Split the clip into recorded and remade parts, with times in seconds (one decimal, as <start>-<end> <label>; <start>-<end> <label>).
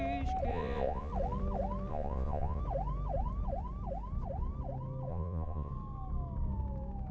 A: 0.0-0.5 recorded; 0.5-1.1 remade; 1.1-1.9 recorded; 1.9-2.6 remade; 2.6-5.1 recorded; 5.1-5.7 remade; 5.7-7.1 recorded